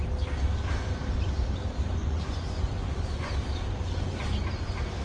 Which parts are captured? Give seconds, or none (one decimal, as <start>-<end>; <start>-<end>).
0.0-2.0; 3.3-5.0